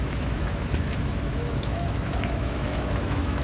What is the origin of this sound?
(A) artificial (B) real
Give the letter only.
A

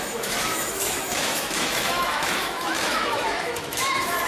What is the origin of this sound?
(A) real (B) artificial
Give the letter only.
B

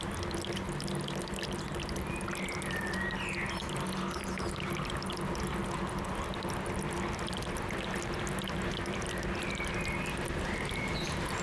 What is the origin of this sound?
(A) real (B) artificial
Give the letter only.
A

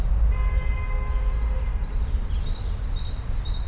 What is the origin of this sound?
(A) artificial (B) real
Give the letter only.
B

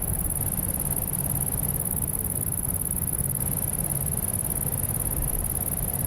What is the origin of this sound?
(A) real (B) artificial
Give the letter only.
A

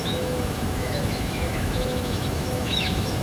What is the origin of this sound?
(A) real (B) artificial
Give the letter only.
B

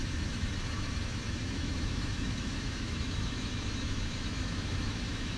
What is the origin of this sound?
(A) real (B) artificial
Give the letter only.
B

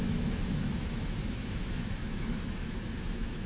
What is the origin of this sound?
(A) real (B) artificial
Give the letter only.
B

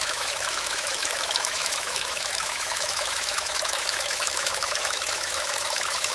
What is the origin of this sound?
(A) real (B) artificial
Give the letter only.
B